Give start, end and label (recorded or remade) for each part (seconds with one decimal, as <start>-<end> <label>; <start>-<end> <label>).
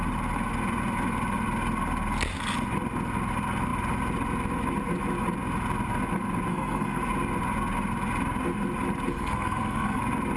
0.0-6.5 recorded; 6.5-7.0 remade; 7.0-9.1 recorded; 9.1-10.0 remade; 10.0-10.4 recorded